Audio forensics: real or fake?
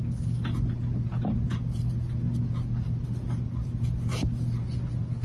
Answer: real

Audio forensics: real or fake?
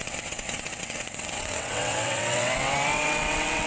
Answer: fake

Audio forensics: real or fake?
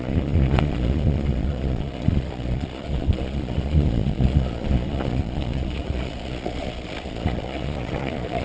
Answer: fake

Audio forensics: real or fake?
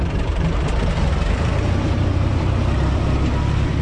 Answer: fake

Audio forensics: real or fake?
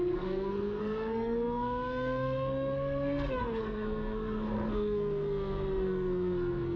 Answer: fake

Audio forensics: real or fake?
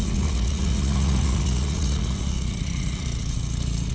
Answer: fake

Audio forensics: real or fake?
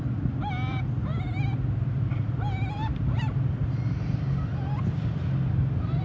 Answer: real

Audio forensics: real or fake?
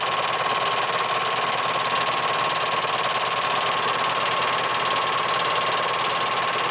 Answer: real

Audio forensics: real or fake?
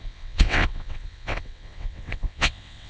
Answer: fake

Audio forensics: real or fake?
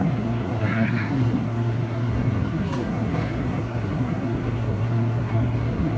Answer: fake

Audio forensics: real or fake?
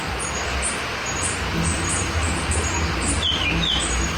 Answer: real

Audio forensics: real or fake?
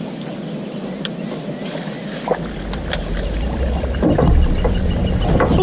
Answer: real